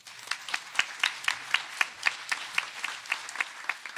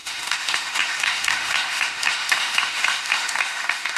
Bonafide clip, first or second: first